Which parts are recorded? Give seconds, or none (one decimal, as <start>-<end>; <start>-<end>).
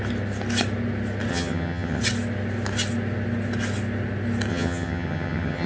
0.0-1.3; 2.0-4.5